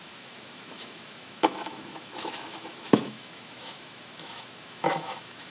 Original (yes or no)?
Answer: no